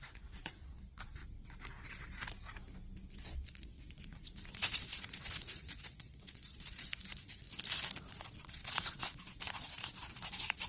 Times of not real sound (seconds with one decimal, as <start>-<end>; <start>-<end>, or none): 0.0-1.2; 3.4-6.9; 8.1-10.7